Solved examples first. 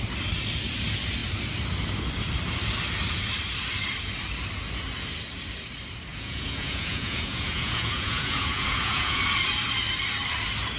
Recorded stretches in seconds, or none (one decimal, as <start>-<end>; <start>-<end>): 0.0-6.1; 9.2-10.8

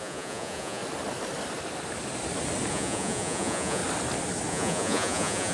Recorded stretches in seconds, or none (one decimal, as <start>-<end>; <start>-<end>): 0.8-2.7; 3.8-4.5

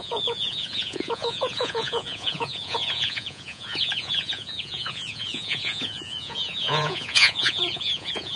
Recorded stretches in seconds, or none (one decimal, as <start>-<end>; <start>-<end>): none